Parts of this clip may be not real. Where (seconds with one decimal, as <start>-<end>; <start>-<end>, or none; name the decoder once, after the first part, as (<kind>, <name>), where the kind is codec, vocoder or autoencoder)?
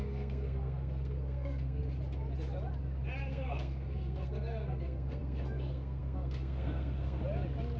0.0-1.8 (codec, SNAC); 3.2-7.2